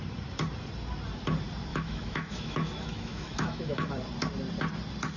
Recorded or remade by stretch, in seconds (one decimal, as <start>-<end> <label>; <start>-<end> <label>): 0.0-1.7 recorded; 1.7-3.9 remade; 3.9-5.2 recorded